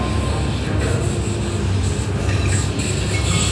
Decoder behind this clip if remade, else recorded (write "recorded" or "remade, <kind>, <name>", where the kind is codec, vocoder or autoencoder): recorded